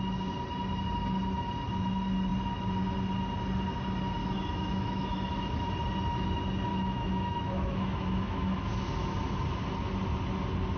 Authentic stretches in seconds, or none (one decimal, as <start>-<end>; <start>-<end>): 0.0-4.2; 5.7-6.7; 8.9-10.8